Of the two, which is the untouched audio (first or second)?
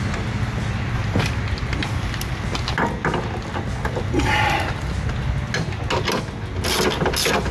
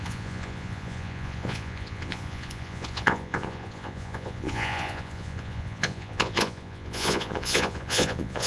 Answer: first